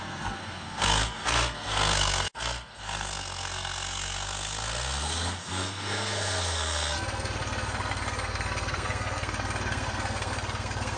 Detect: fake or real fake